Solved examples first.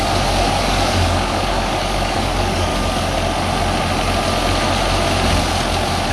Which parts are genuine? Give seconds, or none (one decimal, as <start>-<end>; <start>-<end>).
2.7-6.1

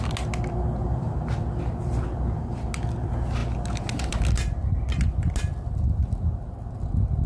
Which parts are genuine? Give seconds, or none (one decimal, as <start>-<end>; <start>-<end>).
0.0-7.3

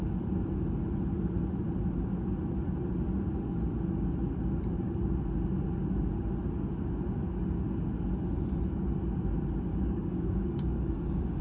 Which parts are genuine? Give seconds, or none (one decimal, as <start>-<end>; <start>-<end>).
0.0-9.7

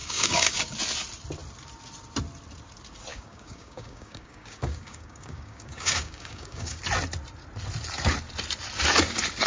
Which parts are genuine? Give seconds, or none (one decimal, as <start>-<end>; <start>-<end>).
0.7-3.1; 6.8-9.5

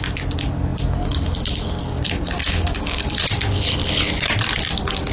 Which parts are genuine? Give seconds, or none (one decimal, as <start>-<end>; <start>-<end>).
0.0-2.4; 3.1-5.1

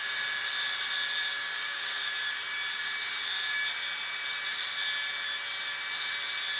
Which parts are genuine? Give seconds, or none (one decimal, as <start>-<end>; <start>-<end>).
0.0-1.4; 2.1-6.6